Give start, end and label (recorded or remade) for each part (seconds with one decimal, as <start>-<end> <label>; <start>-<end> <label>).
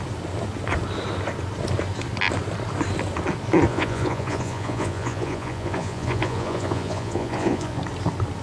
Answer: 0.0-3.7 recorded; 3.7-7.8 remade; 7.8-8.4 recorded